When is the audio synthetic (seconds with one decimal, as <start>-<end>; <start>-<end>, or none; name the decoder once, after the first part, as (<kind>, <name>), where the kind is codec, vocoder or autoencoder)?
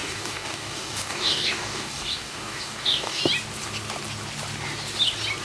0.0-3.2 (codec, DAC)